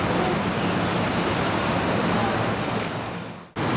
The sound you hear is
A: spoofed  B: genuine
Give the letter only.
B